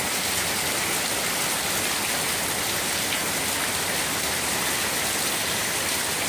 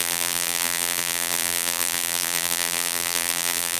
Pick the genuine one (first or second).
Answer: first